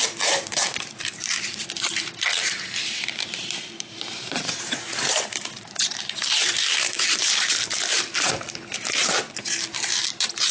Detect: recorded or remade remade